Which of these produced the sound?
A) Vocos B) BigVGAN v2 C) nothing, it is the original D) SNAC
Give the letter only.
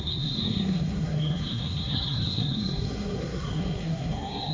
D